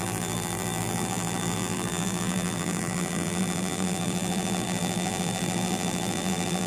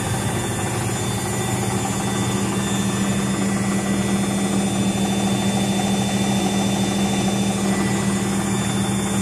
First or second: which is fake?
first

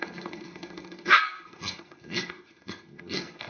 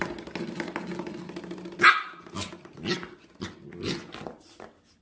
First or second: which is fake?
first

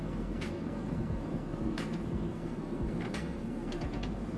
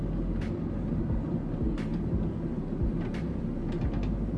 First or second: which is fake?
first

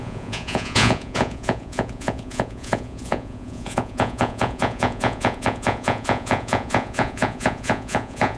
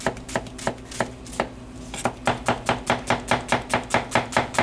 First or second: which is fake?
first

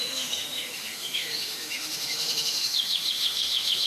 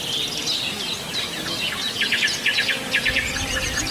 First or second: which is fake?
first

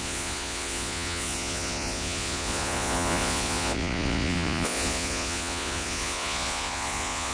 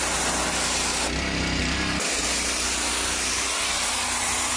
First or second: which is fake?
first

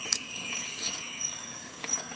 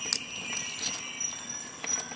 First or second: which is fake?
first